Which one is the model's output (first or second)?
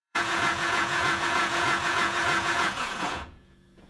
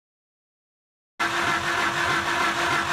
first